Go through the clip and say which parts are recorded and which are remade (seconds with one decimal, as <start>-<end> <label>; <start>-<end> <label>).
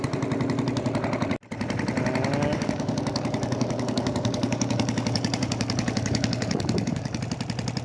0.0-2.5 recorded; 2.5-7.2 remade; 7.2-7.8 recorded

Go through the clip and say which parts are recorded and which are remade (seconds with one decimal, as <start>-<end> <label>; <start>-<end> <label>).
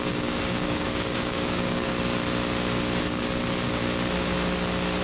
0.0-1.9 remade; 1.9-3.0 recorded; 3.0-3.8 remade; 3.8-5.0 recorded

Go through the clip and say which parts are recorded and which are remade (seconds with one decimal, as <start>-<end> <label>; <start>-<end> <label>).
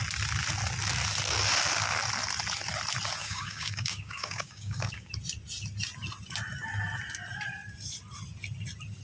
0.0-3.2 recorded; 3.2-5.1 remade; 5.1-9.0 recorded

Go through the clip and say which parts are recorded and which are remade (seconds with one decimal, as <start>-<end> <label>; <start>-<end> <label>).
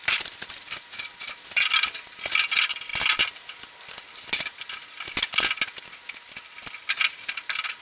0.0-7.8 recorded